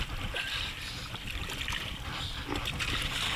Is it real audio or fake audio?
real